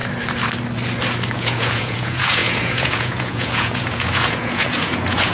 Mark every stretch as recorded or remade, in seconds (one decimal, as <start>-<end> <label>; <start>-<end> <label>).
0.0-1.3 recorded; 1.3-5.3 remade